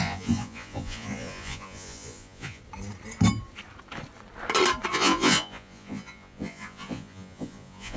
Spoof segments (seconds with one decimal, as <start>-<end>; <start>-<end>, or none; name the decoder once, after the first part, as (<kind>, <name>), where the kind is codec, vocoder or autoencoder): 0.0-2.6 (vocoder, Vocos); 4.9-8.0